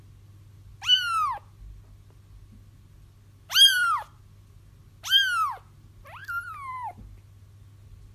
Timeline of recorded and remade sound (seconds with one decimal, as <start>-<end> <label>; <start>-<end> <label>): 0.0-8.1 recorded